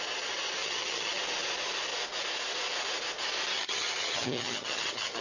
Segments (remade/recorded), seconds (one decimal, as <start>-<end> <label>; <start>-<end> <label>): 0.0-0.6 recorded; 0.6-1.2 remade; 1.2-3.5 recorded; 3.5-5.2 remade